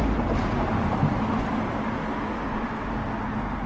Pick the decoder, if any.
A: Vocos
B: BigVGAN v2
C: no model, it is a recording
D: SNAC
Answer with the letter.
C